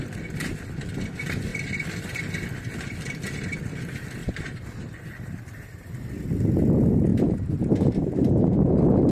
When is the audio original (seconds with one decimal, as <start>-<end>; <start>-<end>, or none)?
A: 0.0-1.5; 2.2-4.2; 6.1-7.1; 8.7-9.1